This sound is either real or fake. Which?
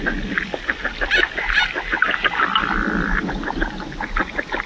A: real